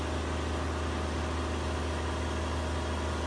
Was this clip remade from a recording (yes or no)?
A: no